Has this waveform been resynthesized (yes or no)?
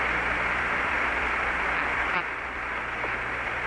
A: yes